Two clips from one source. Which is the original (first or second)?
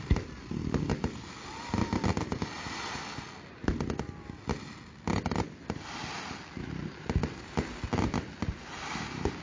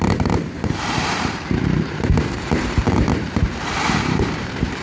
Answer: first